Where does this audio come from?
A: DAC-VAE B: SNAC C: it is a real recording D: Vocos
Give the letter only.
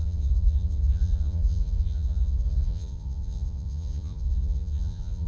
D